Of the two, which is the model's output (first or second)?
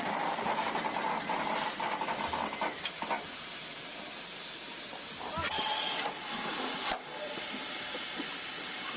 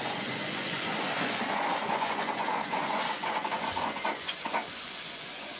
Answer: second